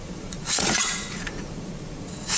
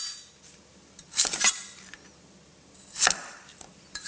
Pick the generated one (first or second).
first